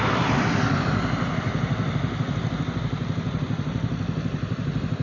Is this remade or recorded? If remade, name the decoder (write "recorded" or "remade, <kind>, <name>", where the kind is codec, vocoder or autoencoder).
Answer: recorded